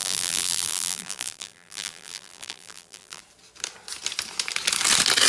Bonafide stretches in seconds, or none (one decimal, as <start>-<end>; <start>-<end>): 3.2-5.3